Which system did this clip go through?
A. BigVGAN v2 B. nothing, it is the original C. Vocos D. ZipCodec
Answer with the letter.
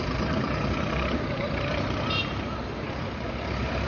A